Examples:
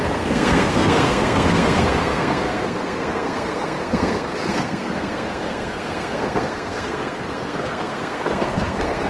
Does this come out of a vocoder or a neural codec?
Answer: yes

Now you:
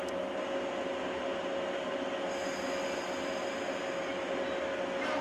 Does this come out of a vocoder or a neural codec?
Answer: no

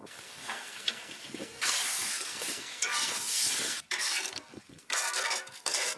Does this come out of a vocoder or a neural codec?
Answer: yes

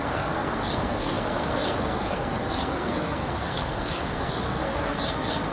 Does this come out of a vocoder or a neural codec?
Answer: yes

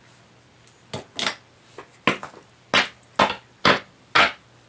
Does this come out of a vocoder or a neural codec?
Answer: no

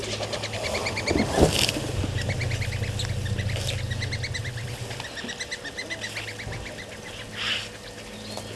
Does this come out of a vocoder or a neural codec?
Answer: no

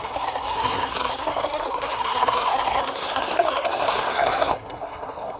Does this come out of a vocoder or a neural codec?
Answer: yes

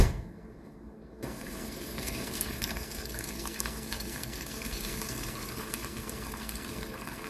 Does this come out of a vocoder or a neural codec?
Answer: yes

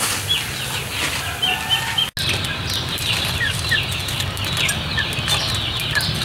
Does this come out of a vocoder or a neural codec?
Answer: no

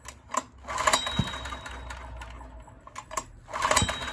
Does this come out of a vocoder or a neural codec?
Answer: no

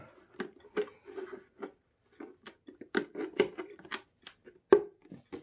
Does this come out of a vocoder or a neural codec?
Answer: no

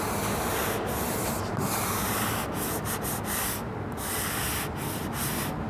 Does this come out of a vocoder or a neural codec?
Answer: no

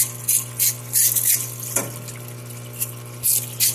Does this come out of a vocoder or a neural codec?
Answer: no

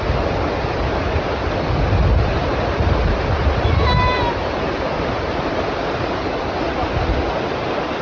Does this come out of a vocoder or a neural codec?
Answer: no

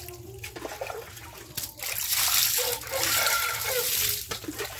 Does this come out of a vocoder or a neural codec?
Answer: no